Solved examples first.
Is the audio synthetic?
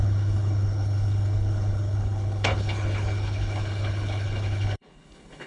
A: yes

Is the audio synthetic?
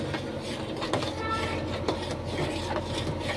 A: no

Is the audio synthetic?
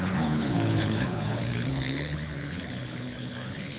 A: yes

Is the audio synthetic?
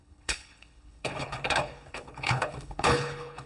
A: yes